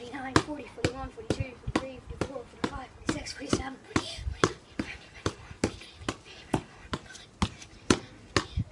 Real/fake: real